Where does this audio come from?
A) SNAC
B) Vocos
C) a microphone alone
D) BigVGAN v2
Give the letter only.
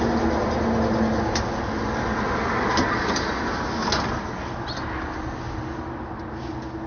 C